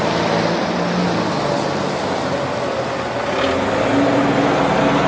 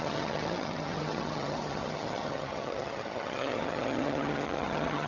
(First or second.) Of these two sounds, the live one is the first